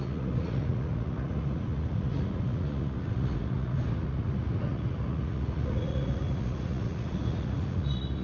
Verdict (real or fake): fake